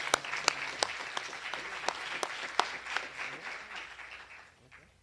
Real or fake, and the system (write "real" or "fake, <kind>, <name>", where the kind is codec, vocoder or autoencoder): real